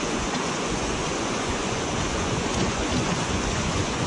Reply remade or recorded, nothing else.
remade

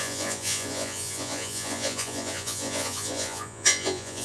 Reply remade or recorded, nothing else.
remade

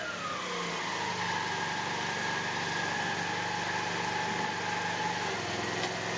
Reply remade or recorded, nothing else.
recorded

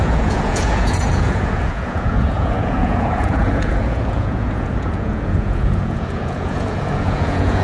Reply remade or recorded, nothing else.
remade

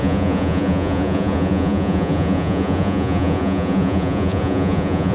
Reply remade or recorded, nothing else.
remade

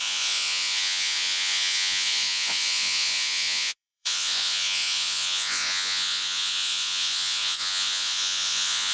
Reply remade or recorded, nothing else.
remade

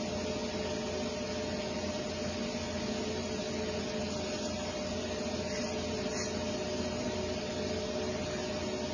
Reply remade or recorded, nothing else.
recorded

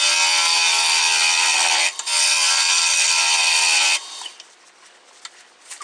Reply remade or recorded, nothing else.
recorded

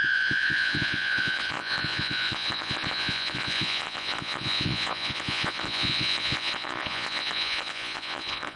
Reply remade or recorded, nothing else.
remade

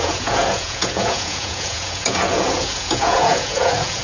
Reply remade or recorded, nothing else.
remade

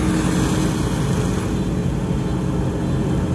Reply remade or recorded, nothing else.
recorded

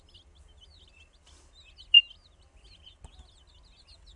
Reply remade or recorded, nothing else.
recorded